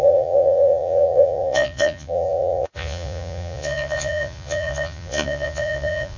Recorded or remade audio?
remade